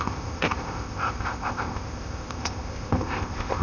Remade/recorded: remade